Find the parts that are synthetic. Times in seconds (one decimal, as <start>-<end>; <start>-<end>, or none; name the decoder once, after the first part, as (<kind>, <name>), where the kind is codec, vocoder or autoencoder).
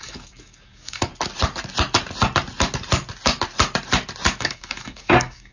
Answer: 0.0-1.1 (codec, DAC); 4.4-5.5